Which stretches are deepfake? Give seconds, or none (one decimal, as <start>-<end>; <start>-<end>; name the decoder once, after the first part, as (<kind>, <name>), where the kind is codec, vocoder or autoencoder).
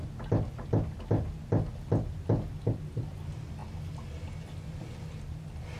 none